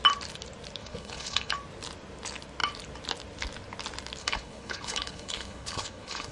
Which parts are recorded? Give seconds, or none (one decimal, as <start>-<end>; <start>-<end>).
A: 0.0-0.8; 1.5-4.2